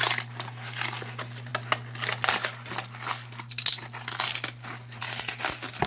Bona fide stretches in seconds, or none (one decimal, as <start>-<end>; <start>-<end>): 0.0-5.9